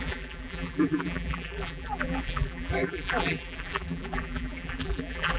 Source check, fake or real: fake